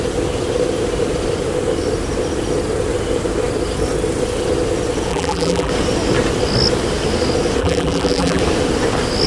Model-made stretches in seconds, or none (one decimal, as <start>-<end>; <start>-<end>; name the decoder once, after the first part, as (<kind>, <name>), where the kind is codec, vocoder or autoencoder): 5.1-5.7 (vocoder, BigVGAN v2); 7.6-8.4